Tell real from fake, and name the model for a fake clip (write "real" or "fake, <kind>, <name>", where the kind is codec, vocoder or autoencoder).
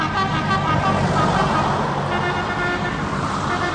real